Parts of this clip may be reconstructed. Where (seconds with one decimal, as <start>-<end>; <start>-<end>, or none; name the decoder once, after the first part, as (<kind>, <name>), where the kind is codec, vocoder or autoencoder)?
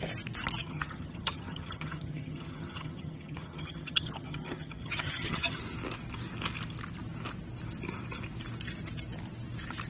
0.6-5.6 (vocoder, HiFi-GAN)